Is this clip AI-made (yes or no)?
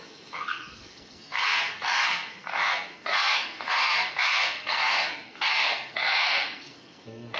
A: yes